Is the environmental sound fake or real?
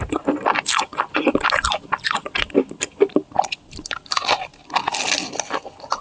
real